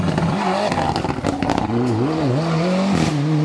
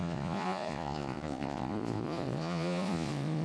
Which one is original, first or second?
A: first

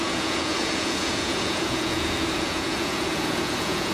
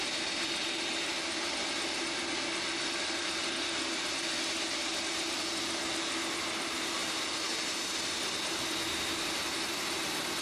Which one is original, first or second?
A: second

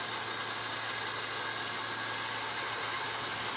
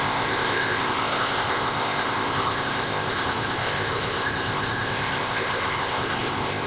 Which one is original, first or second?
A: first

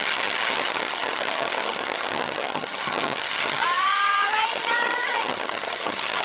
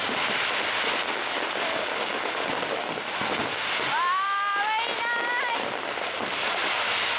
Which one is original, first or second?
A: second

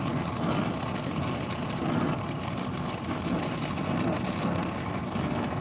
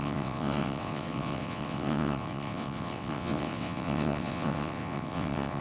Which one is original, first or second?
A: first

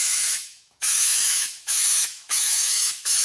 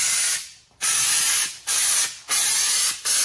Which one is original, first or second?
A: second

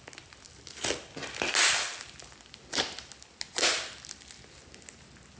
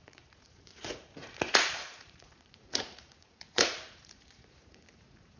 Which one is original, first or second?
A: first